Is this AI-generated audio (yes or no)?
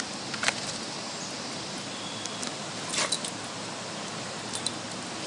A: no